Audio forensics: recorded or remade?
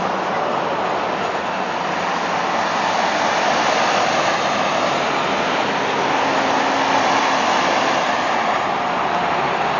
recorded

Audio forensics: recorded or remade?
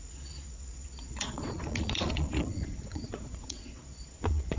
remade